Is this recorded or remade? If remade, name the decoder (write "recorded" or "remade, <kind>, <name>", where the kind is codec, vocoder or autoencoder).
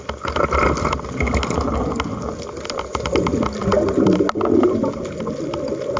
recorded